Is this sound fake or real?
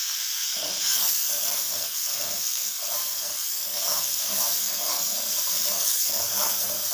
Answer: fake